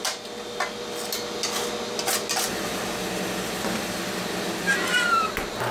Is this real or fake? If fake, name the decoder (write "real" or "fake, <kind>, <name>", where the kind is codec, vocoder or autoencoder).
real